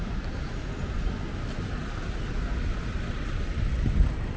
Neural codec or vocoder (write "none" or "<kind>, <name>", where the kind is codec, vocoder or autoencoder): none